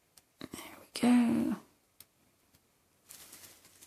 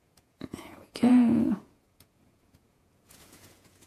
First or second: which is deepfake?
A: second